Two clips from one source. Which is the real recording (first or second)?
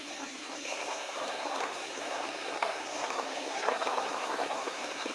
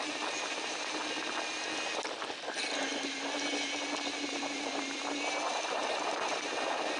second